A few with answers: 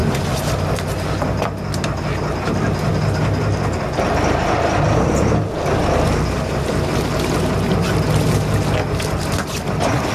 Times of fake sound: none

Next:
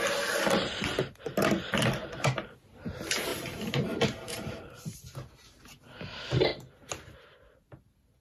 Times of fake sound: 3.3-4.8 (vocoder, BigVGAN v2)

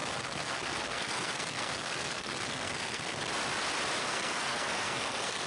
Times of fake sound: 0.0-3.2 (codec, SNAC); 4.0-5.5

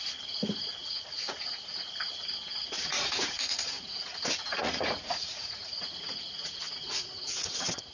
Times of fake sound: 0.8-1.8 (vocoder, Vocos); 2.9-7.9

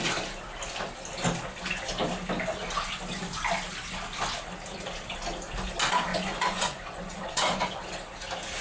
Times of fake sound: 6.1-7.7 (vocoder, Vocos)

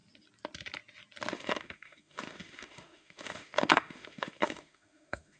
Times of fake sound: 1.3-5.4 (autoencoder, DAC-VAE)